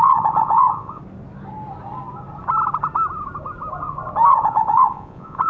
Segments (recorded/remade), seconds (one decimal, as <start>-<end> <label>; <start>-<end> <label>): 0.0-1.0 remade; 1.0-4.3 recorded; 4.3-5.5 remade